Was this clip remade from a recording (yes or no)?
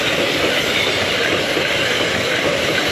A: no